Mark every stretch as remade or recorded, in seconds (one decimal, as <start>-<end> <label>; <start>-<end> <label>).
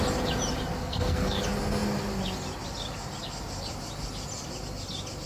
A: 0.0-0.8 recorded; 0.8-1.4 remade; 1.4-5.3 recorded